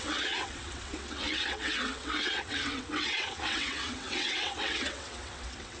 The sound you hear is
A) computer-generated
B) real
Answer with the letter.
A